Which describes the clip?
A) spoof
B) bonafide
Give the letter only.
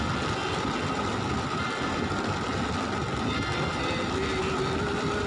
B